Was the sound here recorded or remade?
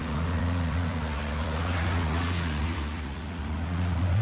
remade